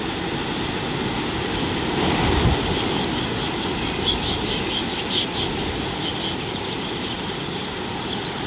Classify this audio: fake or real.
real